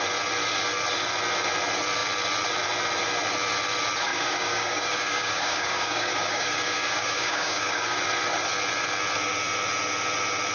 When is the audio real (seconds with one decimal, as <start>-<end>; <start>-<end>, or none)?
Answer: 0.0-4.1; 8.0-10.5